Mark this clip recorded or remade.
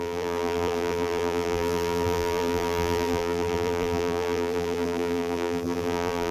remade